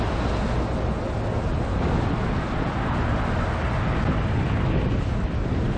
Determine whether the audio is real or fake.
real